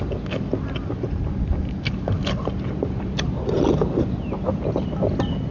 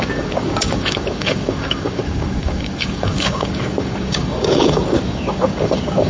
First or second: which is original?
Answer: first